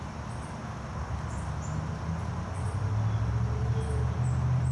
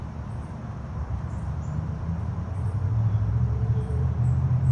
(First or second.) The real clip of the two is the first